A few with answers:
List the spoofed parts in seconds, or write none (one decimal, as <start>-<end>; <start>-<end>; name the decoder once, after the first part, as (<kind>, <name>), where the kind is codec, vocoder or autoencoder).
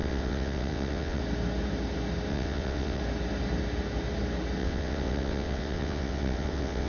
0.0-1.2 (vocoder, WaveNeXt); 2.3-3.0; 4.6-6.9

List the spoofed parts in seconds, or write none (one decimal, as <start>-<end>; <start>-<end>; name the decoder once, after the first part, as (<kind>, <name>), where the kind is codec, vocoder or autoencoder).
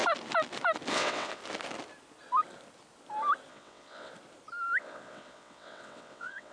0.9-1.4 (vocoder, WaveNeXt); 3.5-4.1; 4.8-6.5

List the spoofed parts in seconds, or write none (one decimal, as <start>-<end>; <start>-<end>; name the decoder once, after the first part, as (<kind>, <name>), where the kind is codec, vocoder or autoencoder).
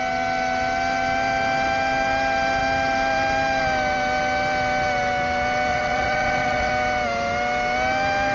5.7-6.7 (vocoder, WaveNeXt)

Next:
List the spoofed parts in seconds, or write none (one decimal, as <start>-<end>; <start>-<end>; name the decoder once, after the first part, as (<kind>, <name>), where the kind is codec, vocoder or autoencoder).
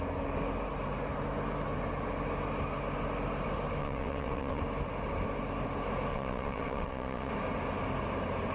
3.8-4.6 (vocoder, WaveNeXt); 6.1-7.3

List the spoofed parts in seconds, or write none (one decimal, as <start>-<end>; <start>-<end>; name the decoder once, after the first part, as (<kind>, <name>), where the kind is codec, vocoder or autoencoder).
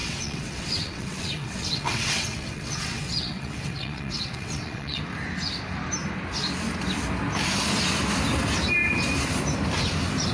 0.0-5.0 (vocoder, WaveNeXt)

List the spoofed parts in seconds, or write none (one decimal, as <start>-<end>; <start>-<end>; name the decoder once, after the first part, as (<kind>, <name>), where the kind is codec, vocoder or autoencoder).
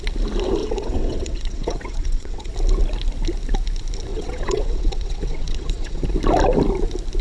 0.6-2.5 (vocoder, WaveNeXt); 4.1-6.1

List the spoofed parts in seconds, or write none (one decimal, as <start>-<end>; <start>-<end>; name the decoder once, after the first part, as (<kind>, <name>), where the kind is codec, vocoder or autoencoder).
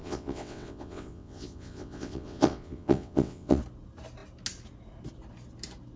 0.0-3.6 (vocoder, WaveNeXt)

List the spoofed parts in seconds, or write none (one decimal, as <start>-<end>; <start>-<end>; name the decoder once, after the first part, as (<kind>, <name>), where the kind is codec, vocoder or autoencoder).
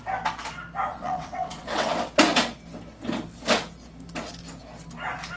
0.9-1.9 (vocoder, WaveNeXt)